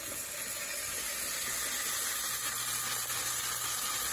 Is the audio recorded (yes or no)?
yes